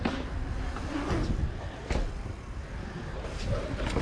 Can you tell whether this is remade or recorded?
recorded